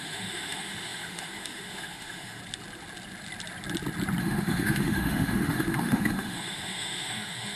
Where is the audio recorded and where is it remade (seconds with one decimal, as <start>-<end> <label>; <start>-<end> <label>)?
0.0-2.4 remade; 2.4-4.2 recorded; 4.2-7.6 remade